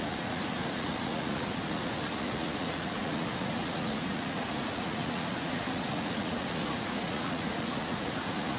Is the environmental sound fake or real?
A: fake